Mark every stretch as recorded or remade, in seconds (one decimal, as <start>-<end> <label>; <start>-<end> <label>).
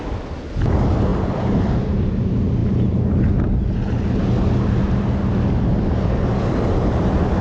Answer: 0.0-7.4 recorded